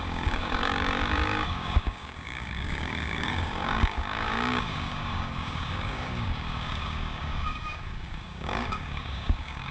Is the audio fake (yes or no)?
yes